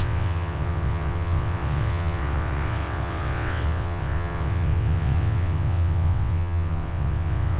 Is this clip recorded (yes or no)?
no